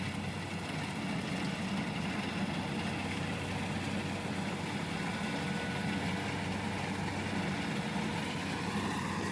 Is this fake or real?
real